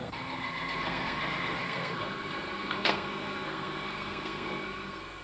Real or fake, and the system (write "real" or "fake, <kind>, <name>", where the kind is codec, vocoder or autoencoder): fake, codec, SNAC